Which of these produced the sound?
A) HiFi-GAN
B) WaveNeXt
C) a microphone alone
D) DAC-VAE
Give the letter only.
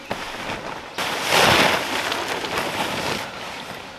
C